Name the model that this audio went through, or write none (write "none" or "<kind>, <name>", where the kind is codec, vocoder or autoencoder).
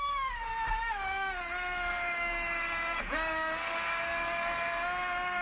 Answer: codec, DAC